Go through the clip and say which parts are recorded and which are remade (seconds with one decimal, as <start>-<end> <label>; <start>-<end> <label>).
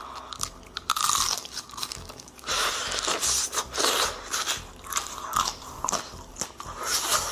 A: 0.0-1.4 recorded; 1.4-2.5 remade; 2.5-7.3 recorded